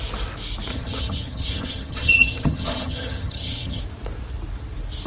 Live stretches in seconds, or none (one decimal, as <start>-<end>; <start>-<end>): 0.0-0.7; 3.8-5.1